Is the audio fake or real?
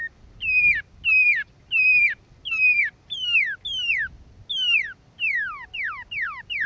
real